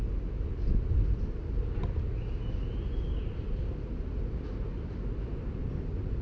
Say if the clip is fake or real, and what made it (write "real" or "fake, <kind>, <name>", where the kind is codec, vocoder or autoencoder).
real